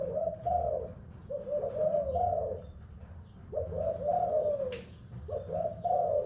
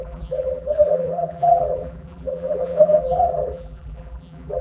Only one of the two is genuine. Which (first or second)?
first